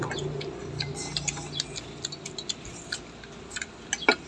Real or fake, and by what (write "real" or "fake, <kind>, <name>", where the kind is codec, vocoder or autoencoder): real